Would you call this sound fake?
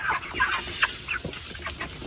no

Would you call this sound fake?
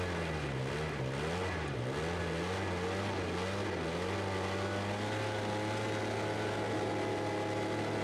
no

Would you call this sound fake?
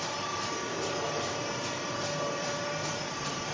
yes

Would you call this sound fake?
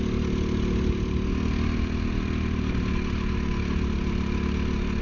no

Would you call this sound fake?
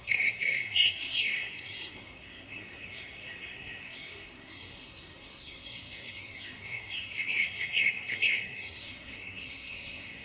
yes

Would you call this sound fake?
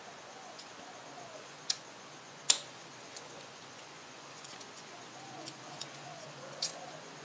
yes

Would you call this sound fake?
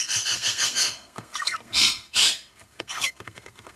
yes